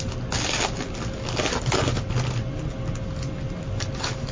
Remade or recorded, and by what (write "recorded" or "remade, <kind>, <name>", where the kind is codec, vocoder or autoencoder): recorded